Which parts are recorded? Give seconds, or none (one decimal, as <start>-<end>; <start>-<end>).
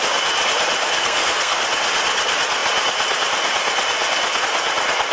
0.0-1.0; 1.6-5.1